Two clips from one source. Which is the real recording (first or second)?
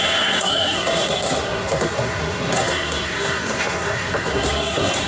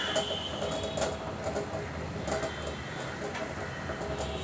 second